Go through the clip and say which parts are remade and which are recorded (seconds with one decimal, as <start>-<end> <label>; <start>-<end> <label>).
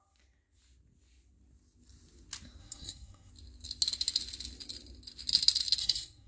0.0-2.6 recorded; 2.6-3.3 remade; 3.3-5.8 recorded; 5.8-6.3 remade